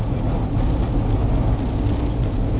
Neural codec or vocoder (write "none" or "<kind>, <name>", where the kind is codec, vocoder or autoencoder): none